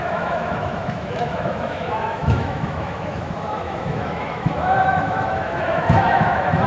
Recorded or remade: remade